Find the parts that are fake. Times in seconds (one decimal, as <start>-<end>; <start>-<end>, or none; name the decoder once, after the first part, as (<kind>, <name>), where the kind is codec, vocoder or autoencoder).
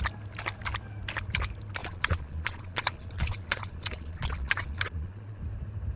1.8-5.4 (vocoder, Vocos)